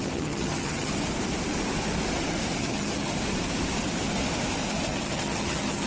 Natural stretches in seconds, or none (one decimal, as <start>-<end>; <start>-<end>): 0.9-2.6; 3.1-4.9